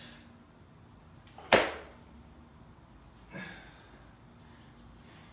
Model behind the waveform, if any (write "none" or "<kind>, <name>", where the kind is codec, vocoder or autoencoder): none